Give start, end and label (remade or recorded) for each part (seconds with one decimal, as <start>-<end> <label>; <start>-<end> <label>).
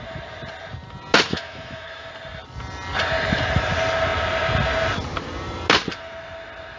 0.0-1.3 recorded; 1.3-2.1 remade; 2.1-6.8 recorded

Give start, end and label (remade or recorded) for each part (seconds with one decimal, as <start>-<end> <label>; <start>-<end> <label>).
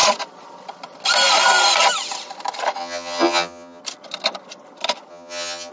0.0-2.8 recorded; 2.8-3.8 remade; 3.8-5.1 recorded; 5.1-5.7 remade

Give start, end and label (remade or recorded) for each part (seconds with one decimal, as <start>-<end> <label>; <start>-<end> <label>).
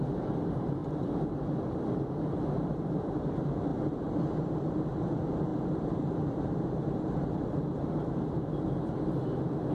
0.0-9.7 remade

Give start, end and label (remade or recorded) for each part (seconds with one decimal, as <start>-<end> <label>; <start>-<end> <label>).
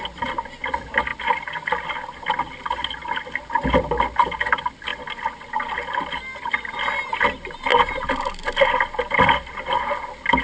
0.0-10.4 recorded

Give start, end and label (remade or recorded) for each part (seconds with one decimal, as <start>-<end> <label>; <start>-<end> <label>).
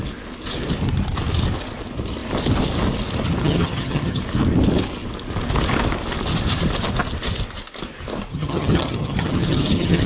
0.0-3.4 recorded; 3.4-4.2 remade; 4.2-8.3 recorded; 8.3-10.1 remade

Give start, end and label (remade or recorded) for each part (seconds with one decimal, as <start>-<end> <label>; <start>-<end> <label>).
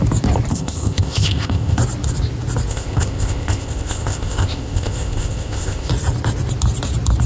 0.0-0.5 recorded; 0.5-1.8 remade; 1.8-2.7 recorded; 2.7-5.9 remade; 5.9-7.3 recorded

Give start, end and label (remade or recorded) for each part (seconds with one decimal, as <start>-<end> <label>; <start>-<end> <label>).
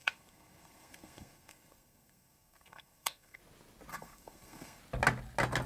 0.0-3.4 remade; 3.4-3.9 recorded; 3.9-4.8 remade; 4.8-5.7 recorded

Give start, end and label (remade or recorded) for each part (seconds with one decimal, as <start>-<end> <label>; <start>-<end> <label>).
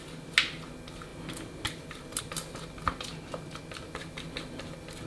0.0-5.1 recorded